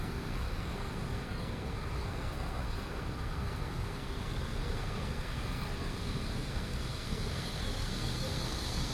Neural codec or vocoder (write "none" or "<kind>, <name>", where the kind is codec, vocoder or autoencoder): codec, SNAC